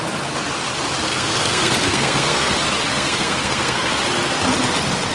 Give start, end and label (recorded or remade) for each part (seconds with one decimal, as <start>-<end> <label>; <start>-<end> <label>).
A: 0.0-1.1 recorded; 1.1-2.5 remade; 2.5-2.9 recorded; 2.9-3.9 remade; 3.9-5.1 recorded